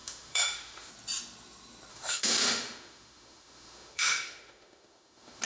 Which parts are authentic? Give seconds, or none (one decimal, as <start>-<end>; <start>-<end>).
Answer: 0.9-1.9